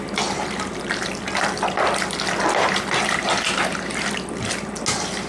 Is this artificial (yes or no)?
no